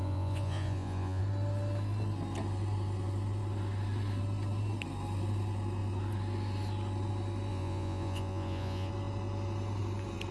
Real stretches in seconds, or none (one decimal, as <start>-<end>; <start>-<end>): 1.2-7.5; 8.9-10.3